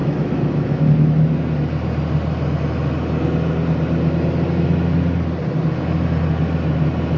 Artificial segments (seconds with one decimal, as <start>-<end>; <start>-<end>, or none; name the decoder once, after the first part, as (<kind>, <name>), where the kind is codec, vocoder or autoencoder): 0.0-1.3 (autoencoder, DAC-VAE)